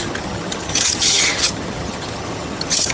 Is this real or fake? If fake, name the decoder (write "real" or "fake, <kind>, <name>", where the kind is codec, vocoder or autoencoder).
fake, vocoder, HiFi-GAN